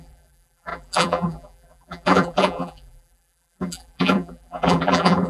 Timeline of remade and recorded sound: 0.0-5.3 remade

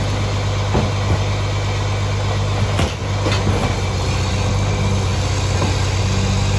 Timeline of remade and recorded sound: 0.0-6.6 recorded

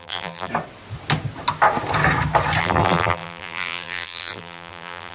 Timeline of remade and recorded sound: 0.0-0.5 remade; 0.5-2.6 recorded; 2.6-5.1 remade

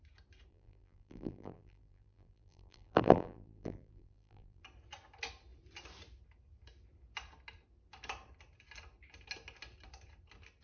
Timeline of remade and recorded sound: 0.0-0.5 recorded; 0.5-4.6 remade; 4.6-10.6 recorded

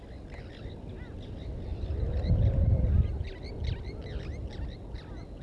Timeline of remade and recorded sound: 0.0-5.4 recorded

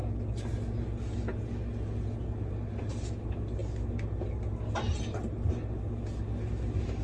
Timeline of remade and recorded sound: 0.0-7.0 recorded